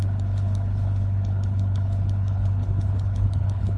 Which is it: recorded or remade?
remade